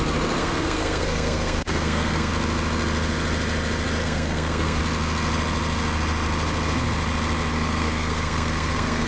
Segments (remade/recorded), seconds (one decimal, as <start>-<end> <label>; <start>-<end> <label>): 0.0-0.4 recorded; 0.4-2.3 remade; 2.3-4.0 recorded; 4.0-4.8 remade; 4.8-7.5 recorded; 7.5-9.1 remade